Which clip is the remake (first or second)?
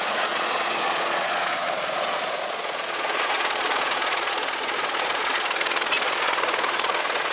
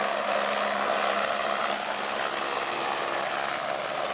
first